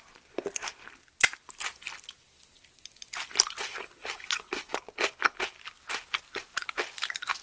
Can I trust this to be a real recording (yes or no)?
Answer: yes